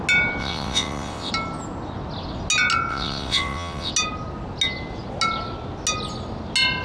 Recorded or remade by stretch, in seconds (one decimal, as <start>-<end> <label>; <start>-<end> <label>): 0.0-0.4 recorded; 0.4-1.3 remade; 1.3-2.9 recorded; 2.9-3.9 remade; 3.9-6.8 recorded